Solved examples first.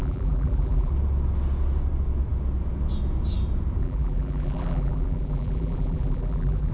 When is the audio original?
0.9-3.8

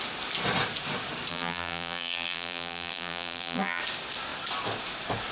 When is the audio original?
0.0-1.3; 3.8-5.3

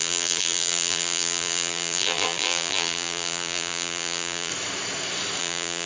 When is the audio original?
4.5-5.4

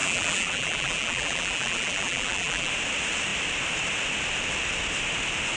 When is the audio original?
2.7-5.6